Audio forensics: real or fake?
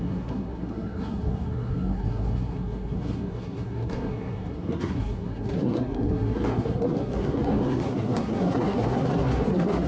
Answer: fake